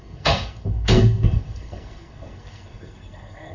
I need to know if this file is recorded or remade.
remade